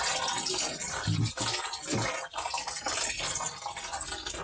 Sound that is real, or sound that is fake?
real